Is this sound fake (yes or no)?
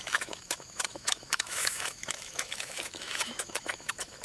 yes